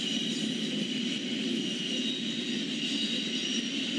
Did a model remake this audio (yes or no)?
no